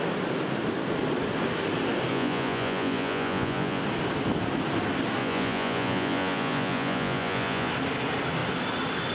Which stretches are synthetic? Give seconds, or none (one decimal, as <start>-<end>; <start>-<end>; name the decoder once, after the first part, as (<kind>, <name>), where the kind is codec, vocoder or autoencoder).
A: 2.1-3.8 (vocoder, Vocos); 5.2-7.7